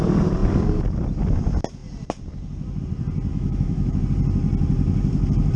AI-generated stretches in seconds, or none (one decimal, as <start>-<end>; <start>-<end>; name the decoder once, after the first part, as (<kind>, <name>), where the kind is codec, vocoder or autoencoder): 3.3-4.0 (autoencoder, DAC-VAE)